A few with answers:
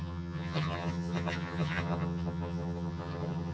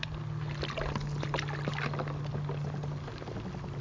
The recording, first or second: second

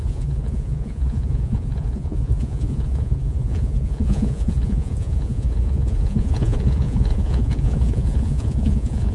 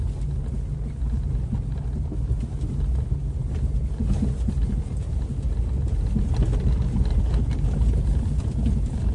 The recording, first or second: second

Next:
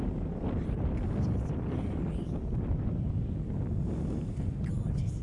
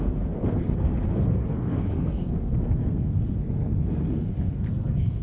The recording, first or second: first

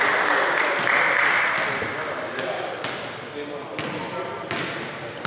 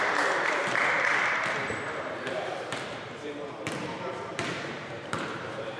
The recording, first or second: first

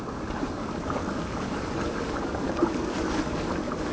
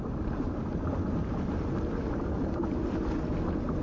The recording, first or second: second